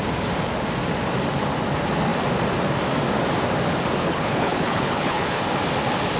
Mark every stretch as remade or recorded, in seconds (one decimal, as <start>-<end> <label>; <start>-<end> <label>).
0.0-4.0 recorded; 4.0-5.4 remade; 5.4-6.2 recorded